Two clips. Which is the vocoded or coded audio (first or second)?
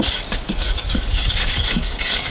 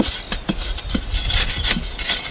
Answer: first